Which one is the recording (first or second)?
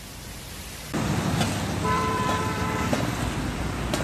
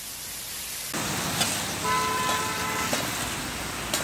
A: second